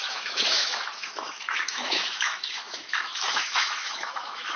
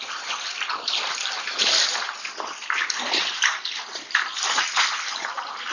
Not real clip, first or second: first